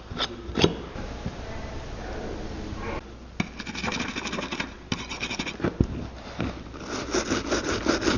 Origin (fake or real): real